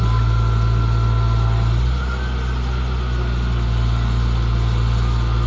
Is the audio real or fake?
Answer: real